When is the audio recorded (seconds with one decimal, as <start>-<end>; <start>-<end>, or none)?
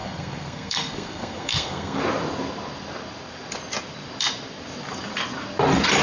2.0-6.0